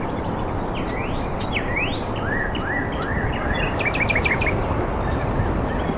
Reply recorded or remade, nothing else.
recorded